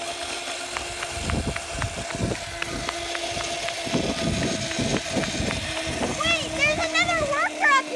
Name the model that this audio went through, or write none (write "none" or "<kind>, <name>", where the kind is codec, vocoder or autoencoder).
none